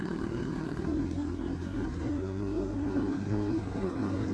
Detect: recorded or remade remade